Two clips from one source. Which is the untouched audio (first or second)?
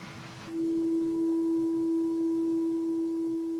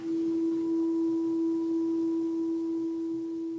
second